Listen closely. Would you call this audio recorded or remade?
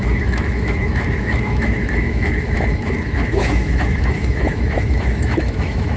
remade